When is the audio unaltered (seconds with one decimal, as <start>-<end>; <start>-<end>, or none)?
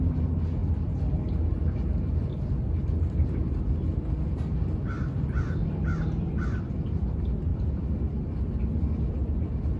0.0-0.6; 3.6-5.6; 6.7-7.5; 8.4-9.8